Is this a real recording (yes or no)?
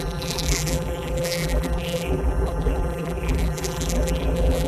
no